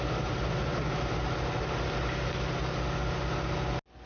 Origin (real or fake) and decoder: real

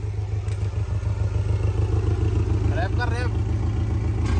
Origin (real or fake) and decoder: real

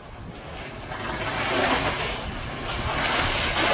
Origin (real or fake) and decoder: real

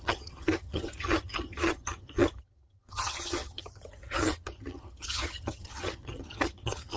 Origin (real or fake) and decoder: fake, vocoder, HiFi-GAN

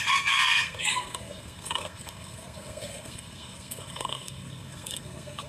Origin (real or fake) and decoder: fake, codec, SNAC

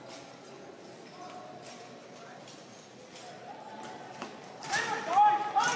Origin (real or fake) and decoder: real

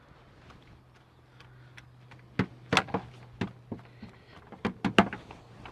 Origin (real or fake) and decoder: real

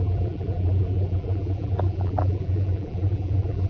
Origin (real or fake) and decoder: fake, vocoder, BigVGAN v2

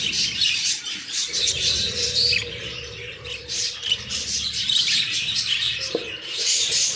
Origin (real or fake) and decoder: fake, vocoder, BigVGAN v2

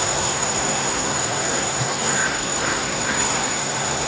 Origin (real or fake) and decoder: fake, codec, SNAC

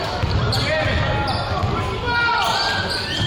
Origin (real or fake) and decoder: real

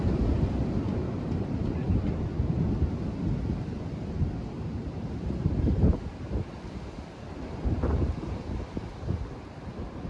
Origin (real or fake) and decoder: real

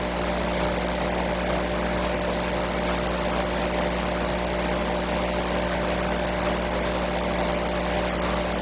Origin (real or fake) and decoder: real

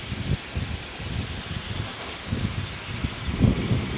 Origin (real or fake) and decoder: real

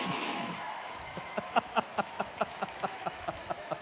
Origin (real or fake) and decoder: fake, autoencoder, DAC-VAE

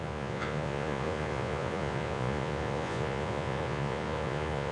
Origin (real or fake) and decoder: fake, vocoder, Vocos